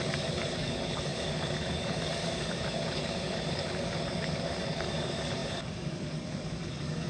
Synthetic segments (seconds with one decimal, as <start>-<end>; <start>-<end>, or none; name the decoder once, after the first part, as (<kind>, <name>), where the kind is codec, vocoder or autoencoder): 0.0-7.1 (codec, DAC)